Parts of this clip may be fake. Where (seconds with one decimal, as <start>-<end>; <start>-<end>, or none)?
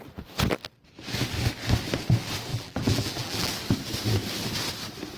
2.5-3.5